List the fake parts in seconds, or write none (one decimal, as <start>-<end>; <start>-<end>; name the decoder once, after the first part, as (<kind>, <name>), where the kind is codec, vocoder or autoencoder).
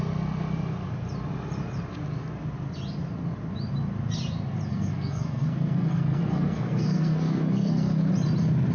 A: 4.7-8.1 (codec, SNAC)